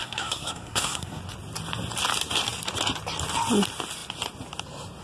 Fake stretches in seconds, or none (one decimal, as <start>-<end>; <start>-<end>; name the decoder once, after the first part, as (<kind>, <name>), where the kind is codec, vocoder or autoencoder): 0.0-1.2 (codec, SNAC)